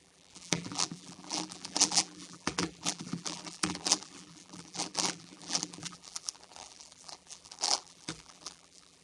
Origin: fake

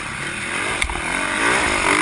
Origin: real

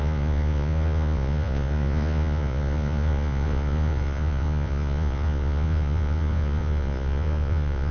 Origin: fake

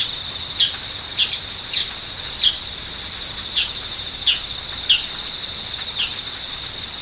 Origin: real